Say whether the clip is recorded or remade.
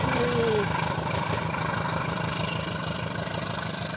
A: recorded